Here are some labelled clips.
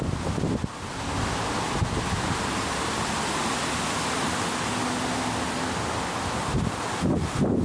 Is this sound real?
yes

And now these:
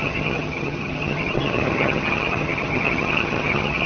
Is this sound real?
no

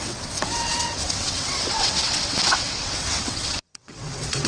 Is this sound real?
no